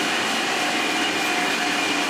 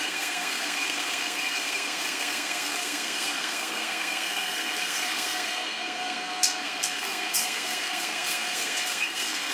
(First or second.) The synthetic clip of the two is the second